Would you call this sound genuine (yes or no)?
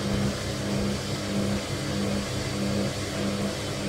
yes